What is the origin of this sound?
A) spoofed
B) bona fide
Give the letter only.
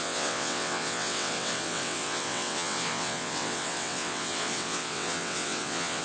A